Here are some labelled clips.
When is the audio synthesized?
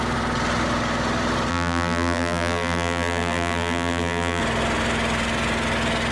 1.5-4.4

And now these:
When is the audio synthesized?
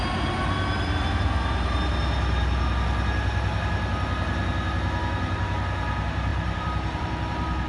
6.3-7.7